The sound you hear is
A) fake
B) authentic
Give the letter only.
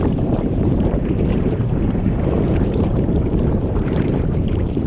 A